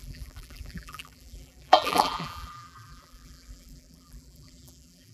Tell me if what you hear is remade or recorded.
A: remade